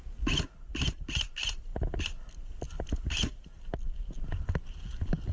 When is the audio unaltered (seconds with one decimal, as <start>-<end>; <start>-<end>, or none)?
0.0-5.3